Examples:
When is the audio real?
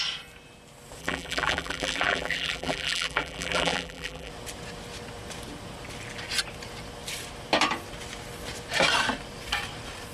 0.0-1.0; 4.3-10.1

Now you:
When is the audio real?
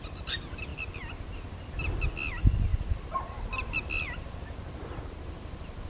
0.0-5.9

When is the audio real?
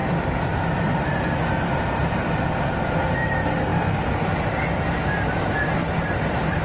1.1-2.0; 3.1-5.8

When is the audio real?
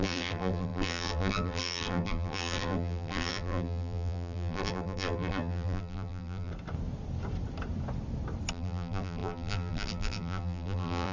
6.5-8.5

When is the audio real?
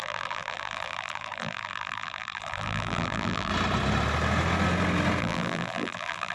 3.5-5.2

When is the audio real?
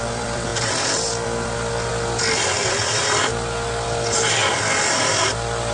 0.5-1.9; 3.3-4.5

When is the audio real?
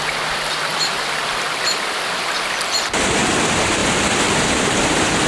0.0-5.3